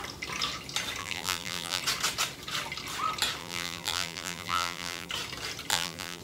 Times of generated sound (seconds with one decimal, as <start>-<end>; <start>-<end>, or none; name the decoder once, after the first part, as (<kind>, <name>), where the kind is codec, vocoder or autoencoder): 1.0-1.8 (vocoder, BigVGAN v2); 3.4-5.1; 5.7-6.2